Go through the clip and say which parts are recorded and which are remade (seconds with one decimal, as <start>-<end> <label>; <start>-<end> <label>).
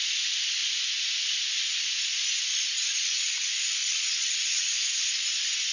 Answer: 0.0-2.5 recorded; 2.5-3.3 remade; 3.3-3.8 recorded; 3.8-4.7 remade; 4.7-5.7 recorded